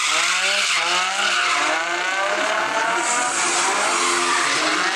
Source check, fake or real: real